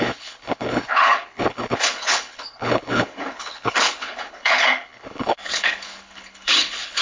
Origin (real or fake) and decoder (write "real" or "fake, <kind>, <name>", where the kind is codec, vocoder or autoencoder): fake, codec, HILCodec